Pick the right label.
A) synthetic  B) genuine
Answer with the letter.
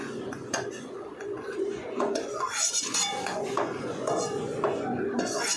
A